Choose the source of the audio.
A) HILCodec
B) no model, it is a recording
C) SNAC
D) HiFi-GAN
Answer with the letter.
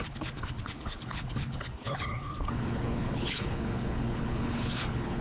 A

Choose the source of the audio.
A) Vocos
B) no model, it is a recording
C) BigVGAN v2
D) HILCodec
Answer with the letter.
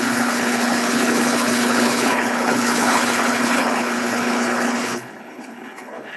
D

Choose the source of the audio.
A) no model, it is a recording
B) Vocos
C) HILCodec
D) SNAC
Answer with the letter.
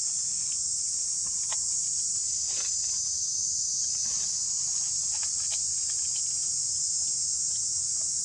A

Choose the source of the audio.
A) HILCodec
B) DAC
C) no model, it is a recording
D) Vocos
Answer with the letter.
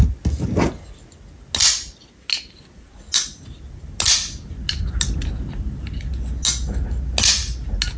C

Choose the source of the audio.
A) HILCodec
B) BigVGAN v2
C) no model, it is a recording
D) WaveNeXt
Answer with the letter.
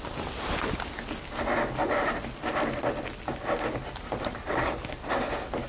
C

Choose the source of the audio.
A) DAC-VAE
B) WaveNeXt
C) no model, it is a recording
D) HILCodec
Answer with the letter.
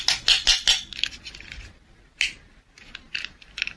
C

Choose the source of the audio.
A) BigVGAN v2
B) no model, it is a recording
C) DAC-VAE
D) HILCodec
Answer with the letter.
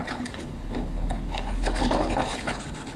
D